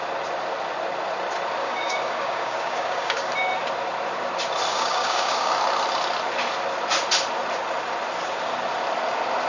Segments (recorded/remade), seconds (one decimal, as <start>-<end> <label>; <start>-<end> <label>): 0.0-1.6 recorded; 1.6-3.3 remade; 3.3-4.7 recorded; 4.7-5.5 remade; 5.5-9.5 recorded